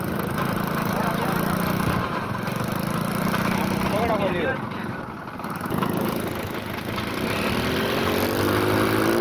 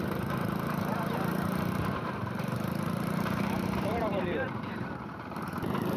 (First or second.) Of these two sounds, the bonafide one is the first